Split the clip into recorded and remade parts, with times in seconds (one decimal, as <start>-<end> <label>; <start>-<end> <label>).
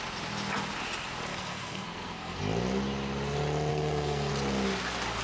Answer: 0.0-1.3 recorded; 1.3-2.4 remade; 2.4-3.7 recorded; 3.7-4.3 remade; 4.3-5.2 recorded